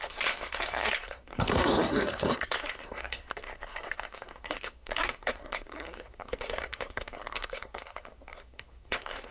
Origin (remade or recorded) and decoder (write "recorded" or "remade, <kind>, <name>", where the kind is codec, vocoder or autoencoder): remade, codec, SNAC